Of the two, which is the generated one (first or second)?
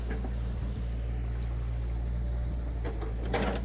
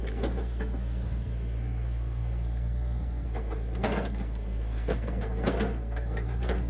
second